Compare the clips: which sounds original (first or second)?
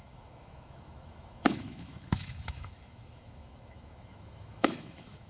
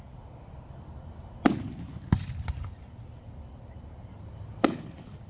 second